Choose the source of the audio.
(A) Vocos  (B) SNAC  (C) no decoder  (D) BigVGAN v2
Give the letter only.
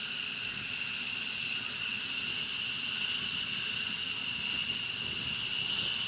C